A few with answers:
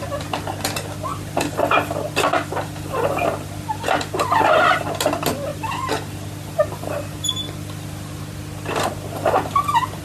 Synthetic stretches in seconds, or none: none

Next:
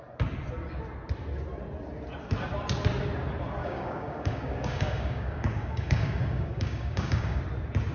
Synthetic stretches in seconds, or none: 3.6-7.4

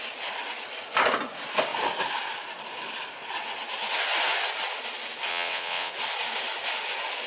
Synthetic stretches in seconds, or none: 5.3-5.9

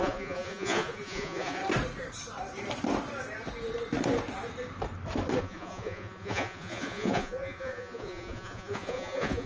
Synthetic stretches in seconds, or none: 0.0-1.6; 5.4-9.5

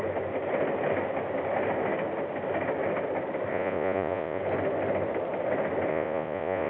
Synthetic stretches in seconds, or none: 3.5-4.4; 5.9-6.7